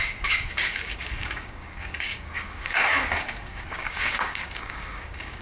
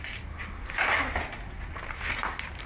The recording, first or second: second